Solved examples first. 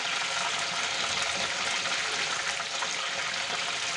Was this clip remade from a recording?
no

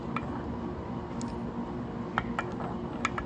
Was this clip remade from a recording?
no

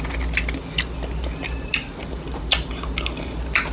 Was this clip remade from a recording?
no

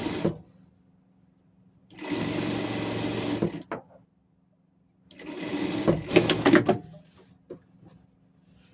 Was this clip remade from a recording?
no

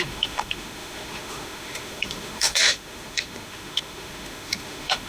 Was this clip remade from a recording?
yes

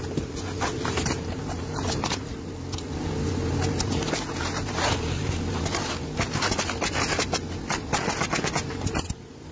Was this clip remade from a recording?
no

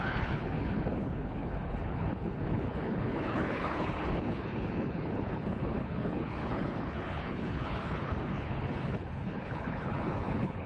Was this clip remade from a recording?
yes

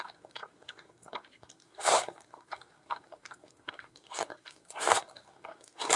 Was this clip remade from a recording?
yes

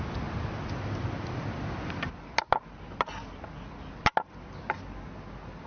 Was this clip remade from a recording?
no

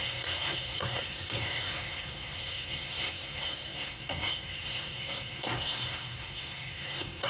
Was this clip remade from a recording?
yes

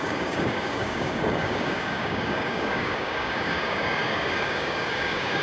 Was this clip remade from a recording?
yes